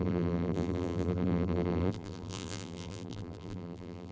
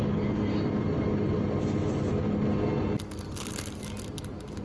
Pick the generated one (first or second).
first